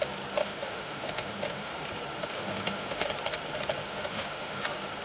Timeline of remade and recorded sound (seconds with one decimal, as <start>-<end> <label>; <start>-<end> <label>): 0.0-0.4 recorded; 0.4-1.7 remade; 1.7-2.3 recorded; 2.3-3.1 remade; 3.1-3.8 recorded; 3.8-4.6 remade; 4.6-5.0 recorded